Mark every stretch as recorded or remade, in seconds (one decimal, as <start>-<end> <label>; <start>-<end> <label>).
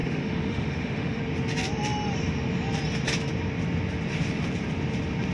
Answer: 0.0-1.2 remade; 1.2-5.3 recorded